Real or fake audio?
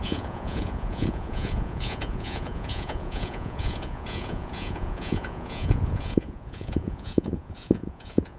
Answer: fake